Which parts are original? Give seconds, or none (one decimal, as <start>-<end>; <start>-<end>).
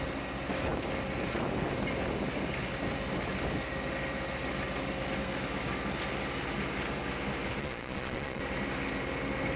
0.0-7.6; 8.4-9.6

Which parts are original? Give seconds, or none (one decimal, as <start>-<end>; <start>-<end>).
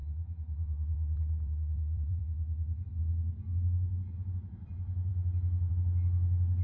2.2-6.6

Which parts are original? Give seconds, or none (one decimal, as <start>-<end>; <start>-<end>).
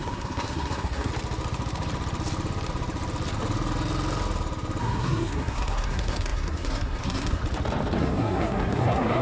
1.1-4.8; 7.4-8.0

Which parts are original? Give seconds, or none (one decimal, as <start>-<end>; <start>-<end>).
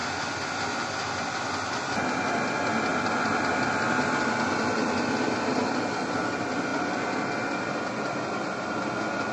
0.0-9.3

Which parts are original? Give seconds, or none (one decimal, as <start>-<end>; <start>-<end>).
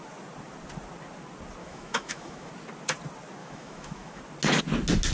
0.0-1.6; 2.5-3.4; 4.2-5.1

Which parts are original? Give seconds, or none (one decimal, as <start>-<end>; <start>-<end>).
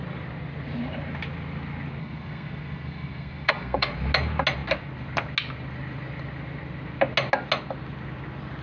0.0-2.0; 3.9-8.6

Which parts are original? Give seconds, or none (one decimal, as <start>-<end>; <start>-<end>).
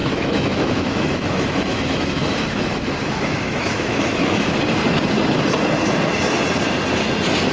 4.5-7.5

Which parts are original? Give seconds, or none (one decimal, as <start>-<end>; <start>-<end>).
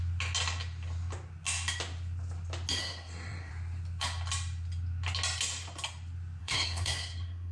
0.0-2.8; 3.5-6.4